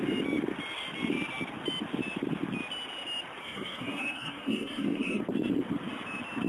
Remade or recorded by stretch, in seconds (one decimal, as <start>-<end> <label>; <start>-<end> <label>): 0.0-3.4 recorded; 3.4-5.2 remade; 5.2-6.5 recorded